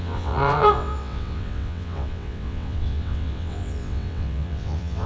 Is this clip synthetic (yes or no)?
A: yes